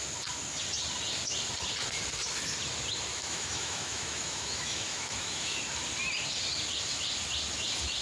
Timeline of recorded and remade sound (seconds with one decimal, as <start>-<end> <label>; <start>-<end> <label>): 0.0-3.1 recorded; 3.1-5.6 remade; 5.6-8.0 recorded